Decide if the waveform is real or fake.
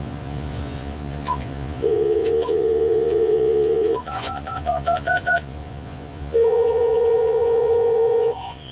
fake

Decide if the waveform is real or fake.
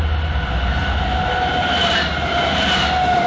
real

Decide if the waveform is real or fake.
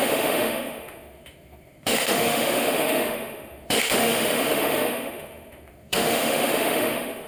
fake